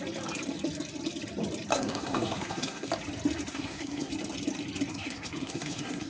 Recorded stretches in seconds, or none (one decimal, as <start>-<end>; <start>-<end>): 0.0-1.7; 2.9-3.5; 4.1-4.9